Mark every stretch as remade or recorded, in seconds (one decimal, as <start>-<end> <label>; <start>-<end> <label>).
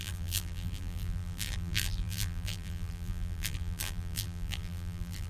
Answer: 0.0-5.3 remade